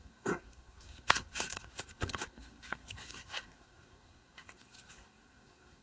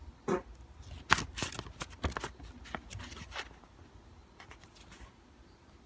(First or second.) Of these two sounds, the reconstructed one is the first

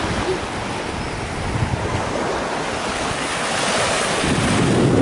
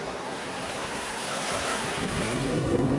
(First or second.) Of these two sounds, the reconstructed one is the second